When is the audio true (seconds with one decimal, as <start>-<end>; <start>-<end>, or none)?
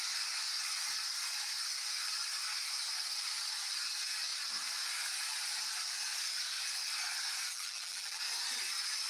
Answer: 0.0-7.5; 8.2-9.1